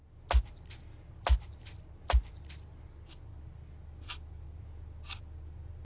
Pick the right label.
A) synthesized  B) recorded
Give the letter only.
B